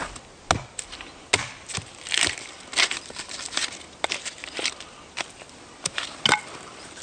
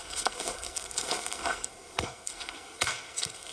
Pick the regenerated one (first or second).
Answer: second